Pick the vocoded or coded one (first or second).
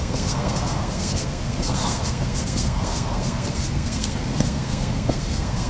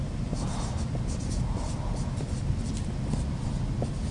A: first